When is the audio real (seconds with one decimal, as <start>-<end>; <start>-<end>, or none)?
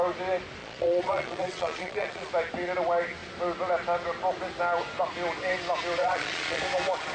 0.0-0.6; 2.3-6.0; 6.6-7.1